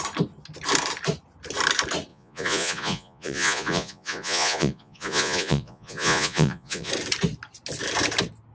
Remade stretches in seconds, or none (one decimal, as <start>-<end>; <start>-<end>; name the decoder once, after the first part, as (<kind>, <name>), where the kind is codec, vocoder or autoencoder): 2.1-6.9 (vocoder, Vocos)